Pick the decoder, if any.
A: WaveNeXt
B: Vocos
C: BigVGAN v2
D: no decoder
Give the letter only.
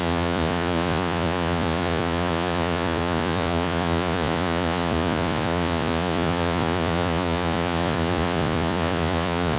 B